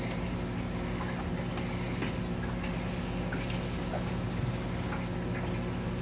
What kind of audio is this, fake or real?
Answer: real